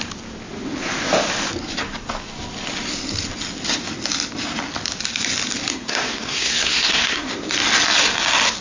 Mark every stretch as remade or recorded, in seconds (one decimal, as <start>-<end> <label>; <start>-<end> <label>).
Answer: 0.0-5.7 recorded; 5.7-7.3 remade; 7.3-8.6 recorded